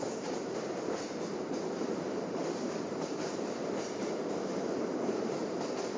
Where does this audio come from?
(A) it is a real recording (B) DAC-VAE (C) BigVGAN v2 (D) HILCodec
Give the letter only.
C